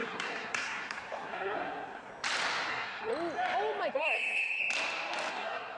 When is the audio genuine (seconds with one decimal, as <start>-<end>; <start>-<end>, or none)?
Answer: 2.1-2.7; 3.1-3.9; 4.6-5.3